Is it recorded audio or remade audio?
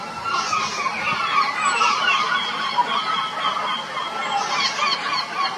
recorded